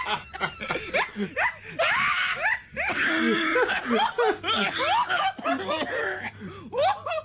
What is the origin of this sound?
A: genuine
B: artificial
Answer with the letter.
A